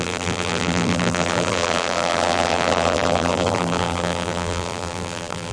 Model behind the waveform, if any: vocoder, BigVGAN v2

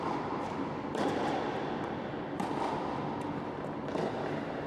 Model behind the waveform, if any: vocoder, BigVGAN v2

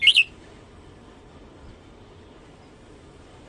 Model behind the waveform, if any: none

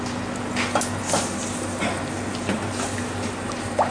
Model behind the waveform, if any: none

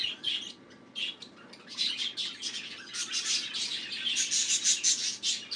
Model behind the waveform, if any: none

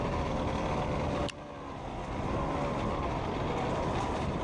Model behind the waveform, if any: none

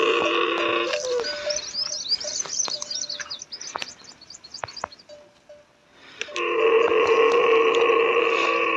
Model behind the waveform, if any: none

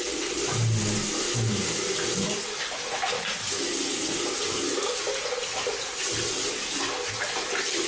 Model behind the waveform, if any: none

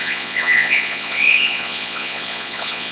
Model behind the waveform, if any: vocoder, Vocos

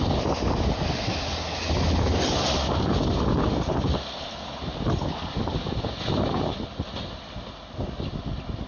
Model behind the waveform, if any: none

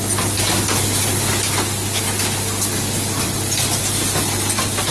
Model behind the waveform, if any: none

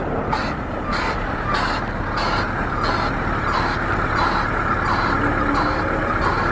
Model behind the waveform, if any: none